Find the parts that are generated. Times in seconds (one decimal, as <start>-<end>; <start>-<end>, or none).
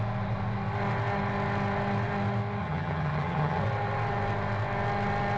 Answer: 2.6-3.6